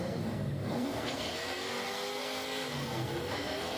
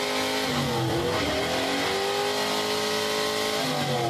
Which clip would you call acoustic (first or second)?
second